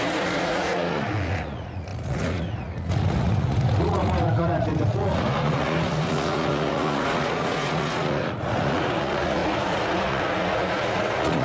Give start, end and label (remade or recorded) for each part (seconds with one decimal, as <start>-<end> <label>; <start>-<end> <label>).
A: 0.0-11.4 remade